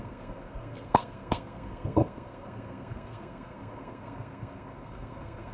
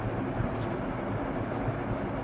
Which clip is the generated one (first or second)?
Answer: first